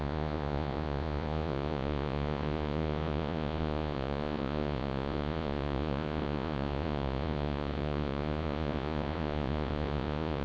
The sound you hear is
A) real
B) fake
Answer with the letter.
B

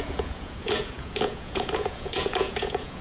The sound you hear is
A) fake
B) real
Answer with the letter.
A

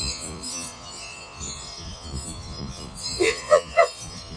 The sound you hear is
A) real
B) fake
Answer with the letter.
B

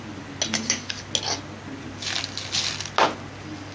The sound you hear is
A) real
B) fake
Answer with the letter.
A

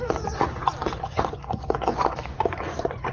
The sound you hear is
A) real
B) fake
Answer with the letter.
B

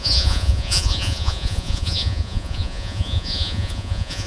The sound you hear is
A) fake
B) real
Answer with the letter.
A